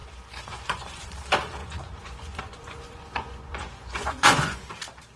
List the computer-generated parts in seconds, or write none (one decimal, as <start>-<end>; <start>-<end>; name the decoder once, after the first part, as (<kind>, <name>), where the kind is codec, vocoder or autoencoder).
0.0-1.1 (vocoder, Vocos); 1.6-4.7